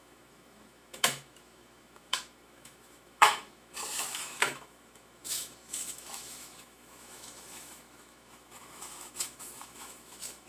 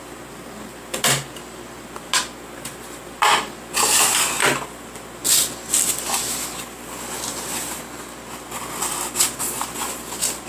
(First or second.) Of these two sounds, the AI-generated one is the first